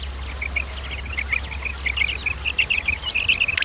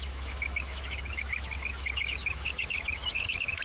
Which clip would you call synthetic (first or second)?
second